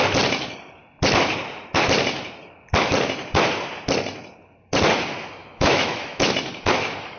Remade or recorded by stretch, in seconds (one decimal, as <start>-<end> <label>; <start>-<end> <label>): 0.0-5.4 recorded; 5.4-6.3 remade; 6.3-7.2 recorded